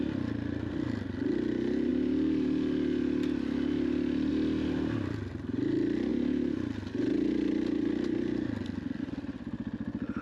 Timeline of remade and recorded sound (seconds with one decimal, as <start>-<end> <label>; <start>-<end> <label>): 0.0-10.2 recorded